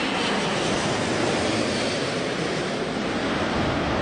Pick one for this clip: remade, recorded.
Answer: recorded